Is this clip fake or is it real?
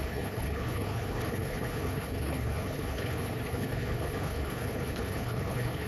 fake